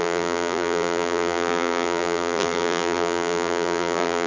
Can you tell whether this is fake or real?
fake